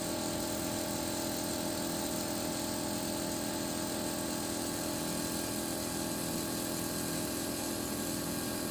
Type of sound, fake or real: real